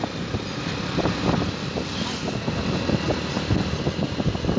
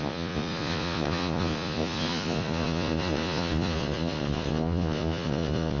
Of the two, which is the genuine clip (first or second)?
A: first